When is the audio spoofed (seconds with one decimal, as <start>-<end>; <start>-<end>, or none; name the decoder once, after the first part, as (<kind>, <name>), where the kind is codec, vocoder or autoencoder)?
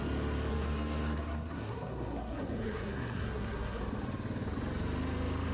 0.5-3.8 (codec, SNAC)